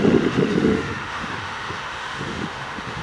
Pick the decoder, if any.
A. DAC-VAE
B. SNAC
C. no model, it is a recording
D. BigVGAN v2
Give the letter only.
A